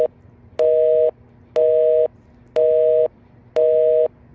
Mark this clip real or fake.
real